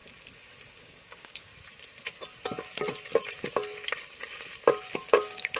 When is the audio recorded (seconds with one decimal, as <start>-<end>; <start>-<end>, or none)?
0.0-0.8; 1.5-4.9